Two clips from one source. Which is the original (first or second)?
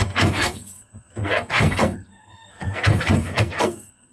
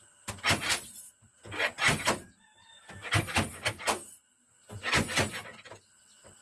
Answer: second